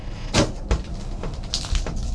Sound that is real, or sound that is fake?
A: real